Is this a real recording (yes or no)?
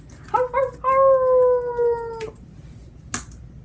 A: yes